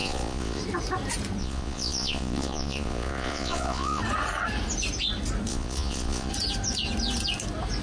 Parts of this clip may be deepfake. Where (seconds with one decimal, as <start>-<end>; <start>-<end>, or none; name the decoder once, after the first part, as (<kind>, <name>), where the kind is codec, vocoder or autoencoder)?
0.0-0.6 (vocoder, Vocos); 1.4-4.0; 5.5-6.3